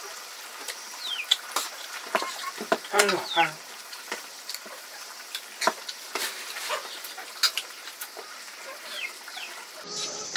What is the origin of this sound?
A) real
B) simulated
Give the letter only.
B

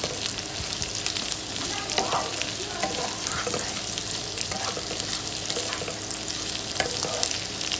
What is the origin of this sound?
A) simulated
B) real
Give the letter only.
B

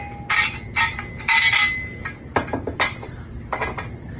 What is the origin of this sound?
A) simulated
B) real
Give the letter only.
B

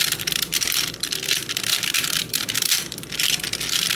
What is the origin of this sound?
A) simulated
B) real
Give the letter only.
A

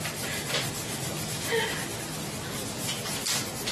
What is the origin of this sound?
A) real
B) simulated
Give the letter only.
A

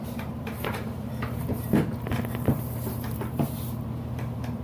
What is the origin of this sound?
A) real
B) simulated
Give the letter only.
B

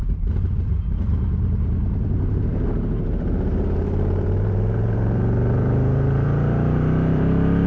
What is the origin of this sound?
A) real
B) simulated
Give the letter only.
B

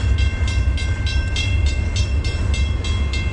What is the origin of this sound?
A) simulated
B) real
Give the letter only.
B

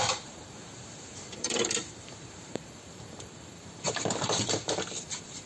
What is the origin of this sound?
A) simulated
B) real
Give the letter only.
A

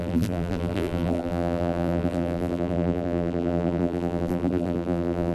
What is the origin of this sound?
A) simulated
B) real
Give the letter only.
A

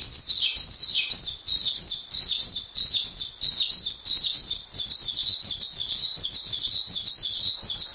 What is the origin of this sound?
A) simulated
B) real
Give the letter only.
B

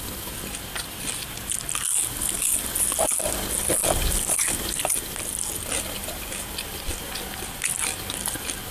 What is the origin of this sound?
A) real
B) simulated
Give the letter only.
A